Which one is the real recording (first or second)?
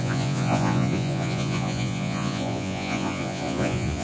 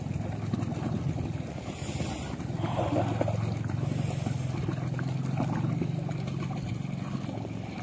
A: second